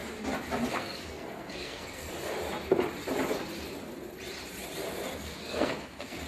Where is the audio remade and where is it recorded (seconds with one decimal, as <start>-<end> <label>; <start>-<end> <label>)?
0.0-0.7 recorded; 0.7-2.1 remade; 2.1-5.1 recorded; 5.1-6.3 remade